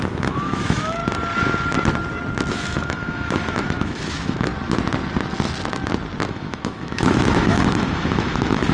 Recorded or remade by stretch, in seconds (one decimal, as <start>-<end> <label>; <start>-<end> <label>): 0.0-1.0 remade; 1.0-2.5 recorded; 2.5-4.5 remade; 4.5-6.3 recorded; 6.3-8.7 remade